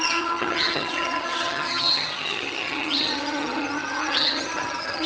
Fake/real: fake